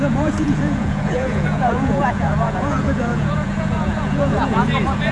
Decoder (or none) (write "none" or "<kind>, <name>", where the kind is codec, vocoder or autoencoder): vocoder, Vocos